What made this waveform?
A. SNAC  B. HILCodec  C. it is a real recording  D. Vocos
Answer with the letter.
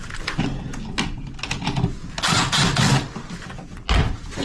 C